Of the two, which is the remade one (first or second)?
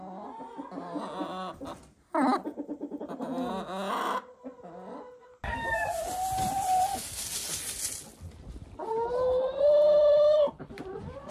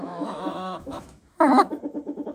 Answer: second